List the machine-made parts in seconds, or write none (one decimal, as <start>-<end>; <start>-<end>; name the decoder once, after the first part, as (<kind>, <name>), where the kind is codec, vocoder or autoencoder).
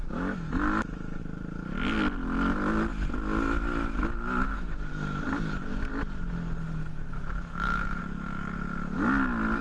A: 0.0-1.2 (autoencoder, DAC-VAE); 3.7-4.9; 6.9-8.0